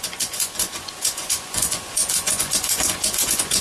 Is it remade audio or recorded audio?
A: remade